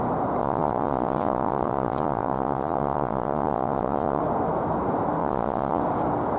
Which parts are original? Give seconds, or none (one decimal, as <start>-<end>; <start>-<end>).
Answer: 0.0-0.4; 4.2-5.2; 5.8-6.4

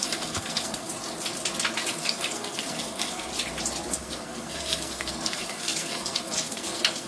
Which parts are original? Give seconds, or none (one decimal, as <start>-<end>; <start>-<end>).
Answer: 0.9-1.9; 3.3-3.9